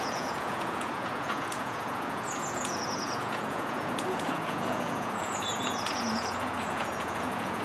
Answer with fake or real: fake